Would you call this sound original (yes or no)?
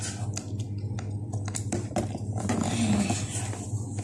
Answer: yes